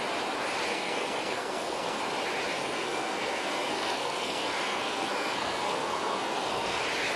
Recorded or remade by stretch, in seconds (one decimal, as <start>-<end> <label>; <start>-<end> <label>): 0.0-0.7 recorded; 0.7-2.0 remade; 2.0-2.5 recorded; 2.5-6.8 remade; 6.8-7.2 recorded